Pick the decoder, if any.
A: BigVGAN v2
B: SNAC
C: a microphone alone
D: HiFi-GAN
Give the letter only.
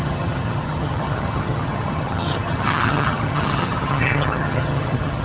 D